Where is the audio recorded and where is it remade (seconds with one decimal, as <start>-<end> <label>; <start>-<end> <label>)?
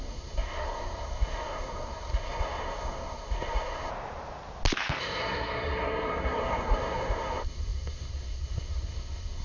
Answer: 0.0-3.9 remade; 3.9-5.0 recorded; 5.0-9.4 remade